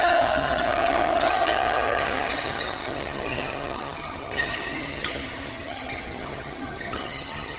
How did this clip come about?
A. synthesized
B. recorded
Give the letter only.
A